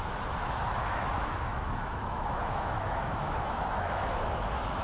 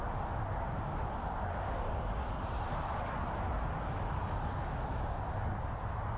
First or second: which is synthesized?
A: first